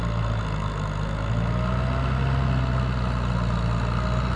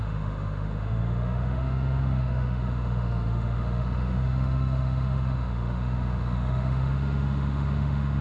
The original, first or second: first